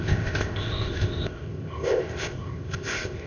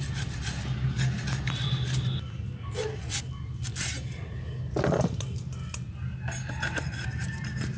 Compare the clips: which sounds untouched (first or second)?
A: second